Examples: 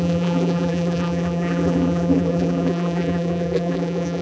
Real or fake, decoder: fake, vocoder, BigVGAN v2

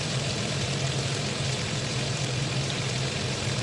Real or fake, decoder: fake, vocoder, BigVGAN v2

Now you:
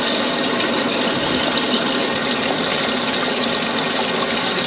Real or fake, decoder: real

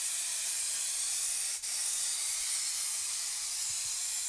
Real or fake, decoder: fake, vocoder, BigVGAN v2